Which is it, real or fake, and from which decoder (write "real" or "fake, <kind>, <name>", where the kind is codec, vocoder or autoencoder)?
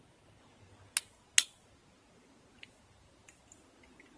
real